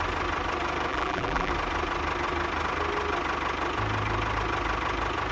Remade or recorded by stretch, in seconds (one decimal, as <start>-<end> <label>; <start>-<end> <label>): 0.0-0.9 recorded; 0.9-1.5 remade; 1.5-5.3 recorded